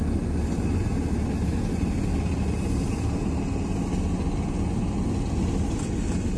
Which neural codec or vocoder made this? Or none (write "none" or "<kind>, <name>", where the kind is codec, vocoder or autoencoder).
none